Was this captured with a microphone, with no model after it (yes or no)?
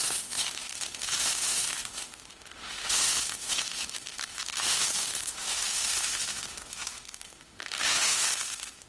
no